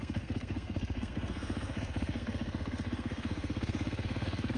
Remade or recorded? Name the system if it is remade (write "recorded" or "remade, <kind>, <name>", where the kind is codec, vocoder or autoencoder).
remade, codec, SNAC